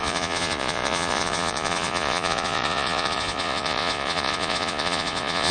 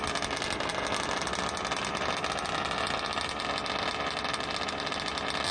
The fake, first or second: first